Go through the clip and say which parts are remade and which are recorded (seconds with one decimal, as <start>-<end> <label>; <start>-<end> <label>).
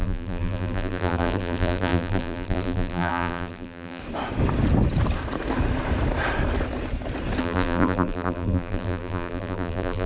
0.0-4.0 remade; 4.0-7.4 recorded; 7.4-10.1 remade